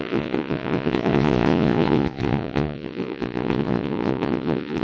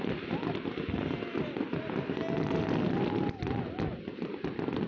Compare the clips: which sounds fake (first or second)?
first